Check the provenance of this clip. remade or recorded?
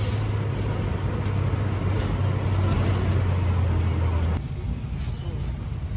recorded